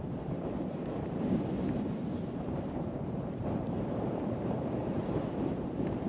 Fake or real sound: fake